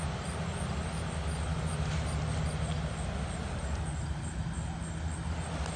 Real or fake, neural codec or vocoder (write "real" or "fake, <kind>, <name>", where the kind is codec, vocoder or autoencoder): real